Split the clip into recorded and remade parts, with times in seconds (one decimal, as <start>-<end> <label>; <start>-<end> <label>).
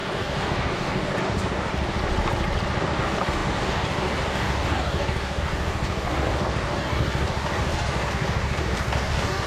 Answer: 0.0-1.7 remade; 1.7-2.8 recorded; 2.8-9.5 remade